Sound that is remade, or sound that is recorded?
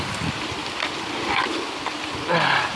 recorded